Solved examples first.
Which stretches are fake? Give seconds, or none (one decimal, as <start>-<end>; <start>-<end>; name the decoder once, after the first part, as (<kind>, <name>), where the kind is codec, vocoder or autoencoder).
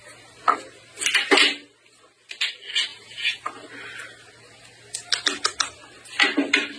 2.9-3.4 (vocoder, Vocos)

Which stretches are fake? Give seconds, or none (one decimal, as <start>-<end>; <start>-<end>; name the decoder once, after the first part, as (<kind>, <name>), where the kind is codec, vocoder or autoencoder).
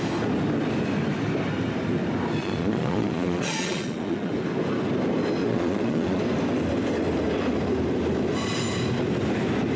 2.4-4.3 (vocoder, Vocos); 5.4-6.2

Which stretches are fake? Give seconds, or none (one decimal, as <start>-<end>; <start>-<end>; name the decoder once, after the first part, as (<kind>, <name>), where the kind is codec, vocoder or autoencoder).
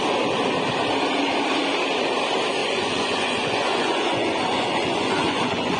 2.6-5.8 (vocoder, Vocos)